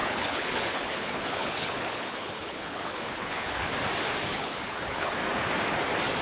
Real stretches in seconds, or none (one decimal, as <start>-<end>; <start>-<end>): 3.7-4.3; 5.1-6.2